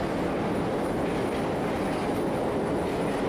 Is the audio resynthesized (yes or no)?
no